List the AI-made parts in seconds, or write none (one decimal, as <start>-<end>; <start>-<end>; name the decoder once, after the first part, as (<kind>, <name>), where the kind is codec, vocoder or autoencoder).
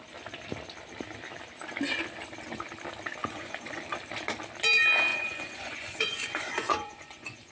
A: 3.2-3.8 (vocoder, Vocos); 5.1-7.5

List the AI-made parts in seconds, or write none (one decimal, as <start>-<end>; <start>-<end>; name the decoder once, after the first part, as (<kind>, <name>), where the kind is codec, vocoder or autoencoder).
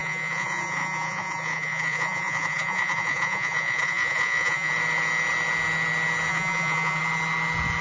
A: 0.0-4.7 (vocoder, Vocos); 6.3-7.0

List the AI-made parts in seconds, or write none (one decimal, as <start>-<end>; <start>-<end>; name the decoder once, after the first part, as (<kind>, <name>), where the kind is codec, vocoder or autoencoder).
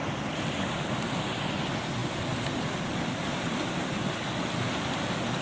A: none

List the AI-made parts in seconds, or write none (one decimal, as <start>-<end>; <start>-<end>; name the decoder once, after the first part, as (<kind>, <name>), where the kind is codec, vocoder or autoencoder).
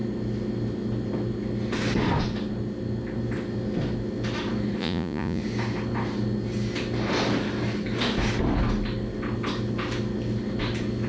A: 4.8-5.4 (vocoder, Vocos)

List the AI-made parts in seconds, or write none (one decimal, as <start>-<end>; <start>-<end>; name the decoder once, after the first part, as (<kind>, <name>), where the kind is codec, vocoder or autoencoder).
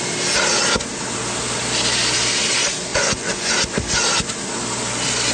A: 2.9-3.5 (vocoder, Vocos)